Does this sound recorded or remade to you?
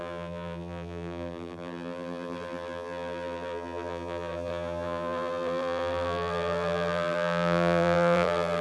remade